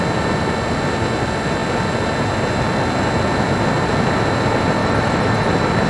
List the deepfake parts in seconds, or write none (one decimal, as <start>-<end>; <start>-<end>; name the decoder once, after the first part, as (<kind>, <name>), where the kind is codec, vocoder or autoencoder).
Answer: 4.8-5.5 (autoencoder, DAC-VAE)